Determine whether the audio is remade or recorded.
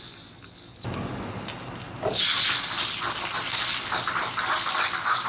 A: recorded